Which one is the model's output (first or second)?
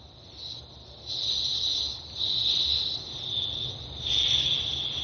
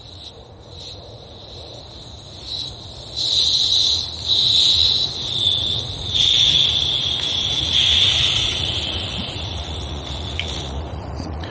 second